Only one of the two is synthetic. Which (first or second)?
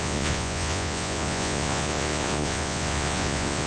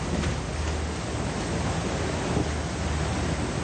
first